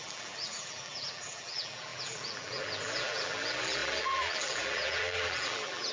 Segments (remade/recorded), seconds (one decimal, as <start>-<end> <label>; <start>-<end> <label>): 0.0-5.9 remade